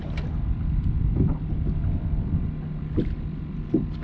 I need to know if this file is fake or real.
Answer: real